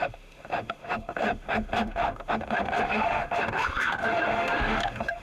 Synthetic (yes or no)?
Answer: yes